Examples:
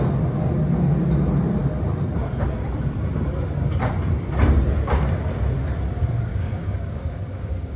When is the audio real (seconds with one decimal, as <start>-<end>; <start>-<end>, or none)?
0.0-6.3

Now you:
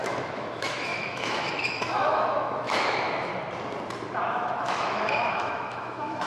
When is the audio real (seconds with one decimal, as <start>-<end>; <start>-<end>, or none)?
3.3-4.2

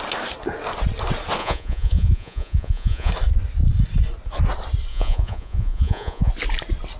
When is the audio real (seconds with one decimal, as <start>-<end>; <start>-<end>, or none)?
0.0-1.4; 3.1-4.9; 6.3-7.0

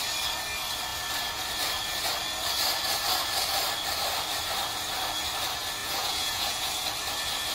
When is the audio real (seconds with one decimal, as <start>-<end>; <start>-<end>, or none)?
0.0-5.8; 6.7-7.5